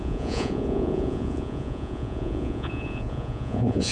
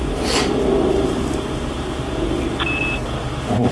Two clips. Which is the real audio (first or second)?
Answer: second